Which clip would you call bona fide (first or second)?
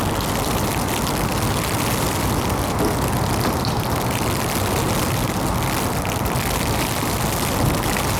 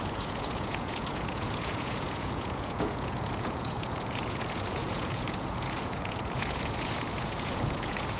first